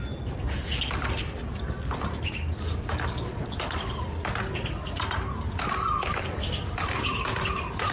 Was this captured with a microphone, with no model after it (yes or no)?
yes